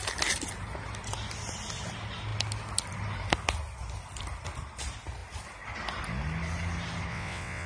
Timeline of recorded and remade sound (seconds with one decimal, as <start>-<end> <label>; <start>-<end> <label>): 0.0-7.1 recorded; 7.1-7.7 remade